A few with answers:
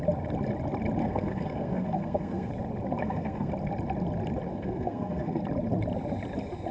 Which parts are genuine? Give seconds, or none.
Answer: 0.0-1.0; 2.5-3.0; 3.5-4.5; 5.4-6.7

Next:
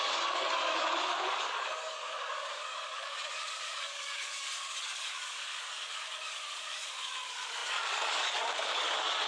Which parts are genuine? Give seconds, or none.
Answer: none

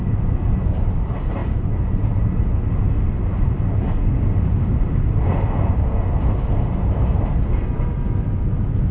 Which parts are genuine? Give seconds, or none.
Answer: 0.0-8.9

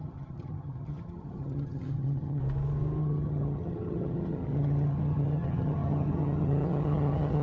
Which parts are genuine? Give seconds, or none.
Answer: 2.4-3.0